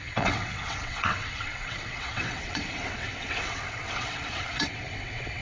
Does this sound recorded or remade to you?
remade